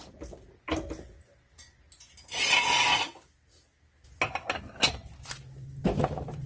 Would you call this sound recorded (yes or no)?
yes